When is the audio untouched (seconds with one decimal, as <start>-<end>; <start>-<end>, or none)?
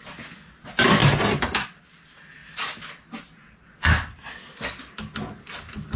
0.0-6.0